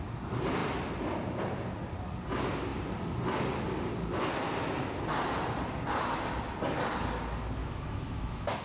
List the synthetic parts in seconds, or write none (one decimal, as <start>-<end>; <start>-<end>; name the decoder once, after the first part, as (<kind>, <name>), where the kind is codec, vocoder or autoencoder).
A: 7.6-8.6 (autoencoder, DAC-VAE)

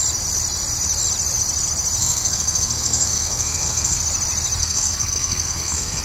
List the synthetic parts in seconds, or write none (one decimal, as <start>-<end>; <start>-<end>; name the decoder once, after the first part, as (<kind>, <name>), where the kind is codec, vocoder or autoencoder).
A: 2.0-4.0 (codec, SNAC); 4.6-6.0